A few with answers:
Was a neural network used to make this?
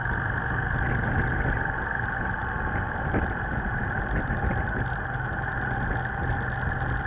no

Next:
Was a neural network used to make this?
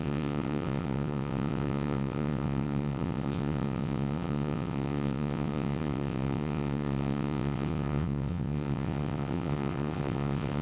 yes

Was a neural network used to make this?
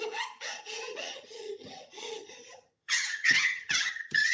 yes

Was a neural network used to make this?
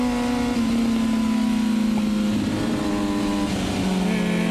no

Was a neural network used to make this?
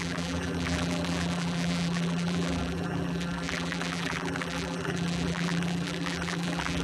yes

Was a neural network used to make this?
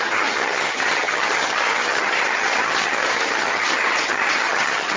yes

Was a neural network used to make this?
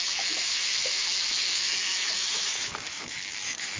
yes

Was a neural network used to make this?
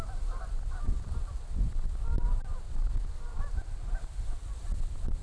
no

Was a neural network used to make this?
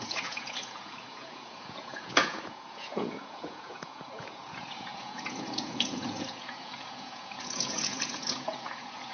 yes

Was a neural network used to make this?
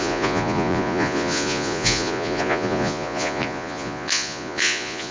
yes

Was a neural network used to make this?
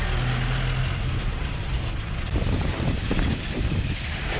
no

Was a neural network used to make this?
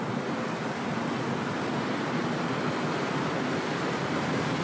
no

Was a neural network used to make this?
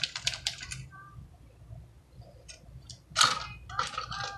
yes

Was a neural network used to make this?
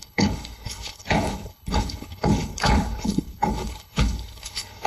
yes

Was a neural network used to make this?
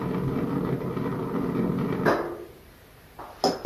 no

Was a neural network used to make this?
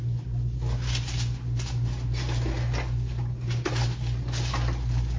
no